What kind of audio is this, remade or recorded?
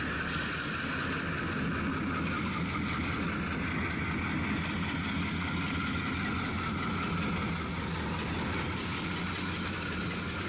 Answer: recorded